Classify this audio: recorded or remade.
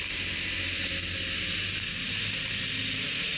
recorded